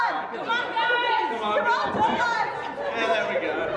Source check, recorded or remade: recorded